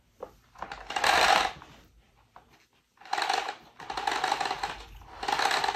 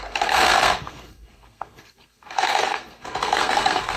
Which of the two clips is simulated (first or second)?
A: second